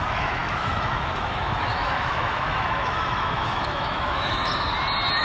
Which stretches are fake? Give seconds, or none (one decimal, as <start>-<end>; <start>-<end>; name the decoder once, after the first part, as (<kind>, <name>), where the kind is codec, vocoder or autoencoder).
0.0-4.5 (autoencoder, DAC-VAE)